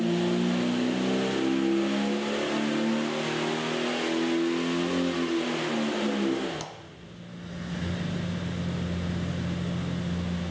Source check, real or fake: real